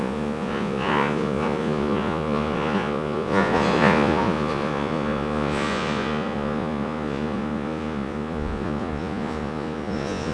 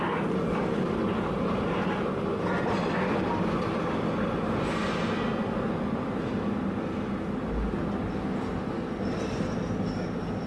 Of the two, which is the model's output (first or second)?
first